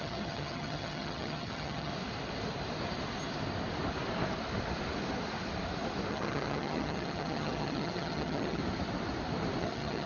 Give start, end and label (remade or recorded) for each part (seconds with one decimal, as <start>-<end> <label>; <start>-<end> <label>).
0.0-1.9 remade; 1.9-6.1 recorded; 6.1-8.6 remade; 8.6-9.6 recorded; 9.6-10.1 remade